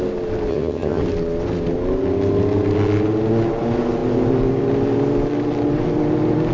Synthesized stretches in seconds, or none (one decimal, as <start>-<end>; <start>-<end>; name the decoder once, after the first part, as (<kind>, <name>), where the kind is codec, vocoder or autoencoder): 0.5-1.0 (vocoder, HiFi-GAN)